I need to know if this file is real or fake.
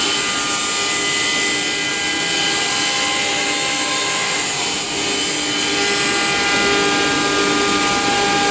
real